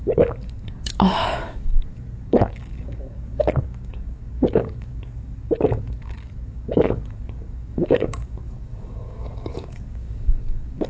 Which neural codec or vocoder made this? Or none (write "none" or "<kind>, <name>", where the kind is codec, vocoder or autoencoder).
codec, DAC